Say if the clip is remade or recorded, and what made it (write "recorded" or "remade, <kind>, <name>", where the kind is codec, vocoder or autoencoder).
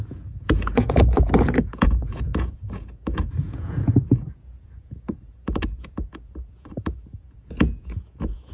remade, vocoder, Vocos